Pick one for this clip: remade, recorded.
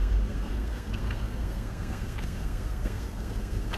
remade